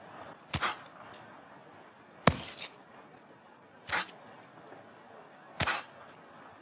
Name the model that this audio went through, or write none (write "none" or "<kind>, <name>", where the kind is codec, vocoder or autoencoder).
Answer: none